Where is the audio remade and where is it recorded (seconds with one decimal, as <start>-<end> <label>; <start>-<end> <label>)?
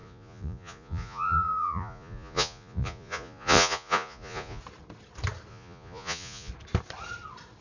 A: 0.0-4.6 remade; 4.6-5.5 recorded; 5.5-6.5 remade; 6.5-7.6 recorded